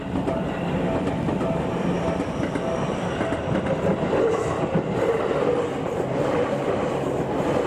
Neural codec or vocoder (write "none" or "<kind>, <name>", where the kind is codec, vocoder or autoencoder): none